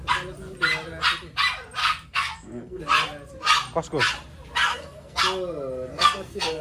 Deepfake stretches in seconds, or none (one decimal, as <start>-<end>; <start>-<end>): 1.8-2.8; 4.7-5.2; 5.9-6.6